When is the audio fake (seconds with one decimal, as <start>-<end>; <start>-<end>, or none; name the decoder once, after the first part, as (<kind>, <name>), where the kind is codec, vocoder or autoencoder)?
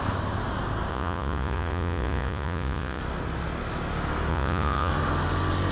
0.9-3.0 (vocoder, Vocos); 4.3-4.9